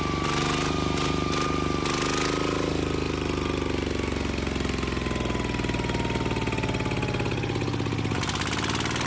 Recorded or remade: recorded